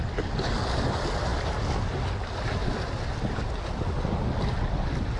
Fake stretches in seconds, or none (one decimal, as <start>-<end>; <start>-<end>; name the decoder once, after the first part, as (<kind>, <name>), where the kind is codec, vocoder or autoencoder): none